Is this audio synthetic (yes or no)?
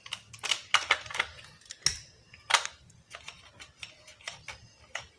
no